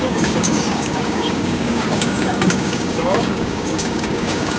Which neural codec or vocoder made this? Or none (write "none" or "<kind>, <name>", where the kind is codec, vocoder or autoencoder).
codec, DAC